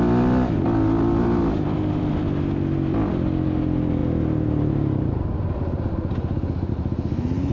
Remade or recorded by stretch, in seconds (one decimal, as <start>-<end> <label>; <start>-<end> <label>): 0.0-7.5 recorded

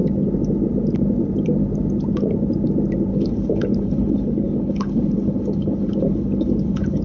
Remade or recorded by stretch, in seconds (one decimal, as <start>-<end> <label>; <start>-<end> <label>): 0.0-3.1 recorded; 3.1-7.0 remade

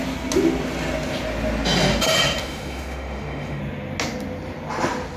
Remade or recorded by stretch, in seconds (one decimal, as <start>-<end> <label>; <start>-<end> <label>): 0.0-2.4 recorded; 2.4-3.6 remade; 3.6-5.2 recorded

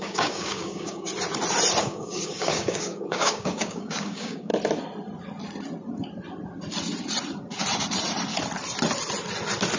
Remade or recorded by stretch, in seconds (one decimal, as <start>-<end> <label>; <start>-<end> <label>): 0.0-1.1 remade; 1.1-1.8 recorded; 1.8-4.5 remade; 4.5-9.8 recorded